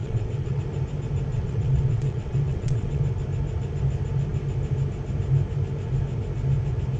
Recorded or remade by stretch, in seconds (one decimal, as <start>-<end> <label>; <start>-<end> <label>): 0.0-0.6 remade; 0.6-1.3 recorded; 1.3-3.0 remade; 3.0-7.0 recorded